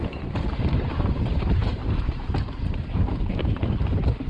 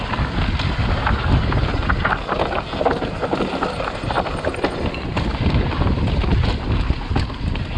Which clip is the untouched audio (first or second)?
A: second